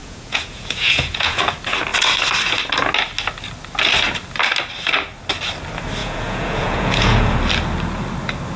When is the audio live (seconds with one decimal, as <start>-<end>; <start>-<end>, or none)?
1.4-6.0; 7.3-8.6